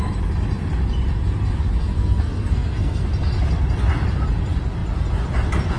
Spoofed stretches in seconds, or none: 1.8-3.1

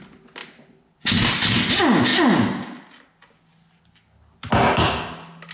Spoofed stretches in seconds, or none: none

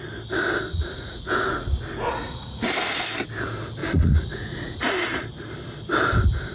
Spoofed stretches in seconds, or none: 0.7-2.7; 3.8-4.9

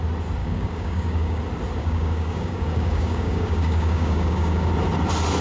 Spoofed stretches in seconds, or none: 0.4-1.4; 1.8-4.7

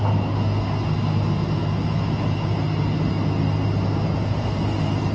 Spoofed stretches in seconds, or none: none

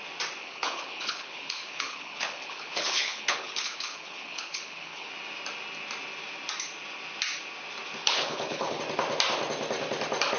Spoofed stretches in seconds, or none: 0.4-5.1; 8.0-8.8

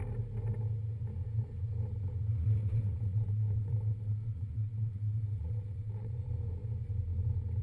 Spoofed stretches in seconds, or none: 2.4-6.1

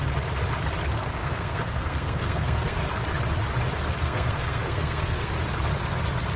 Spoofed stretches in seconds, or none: 1.2-2.8; 4.0-5.3